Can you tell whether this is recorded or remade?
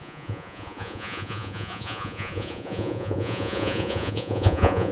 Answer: remade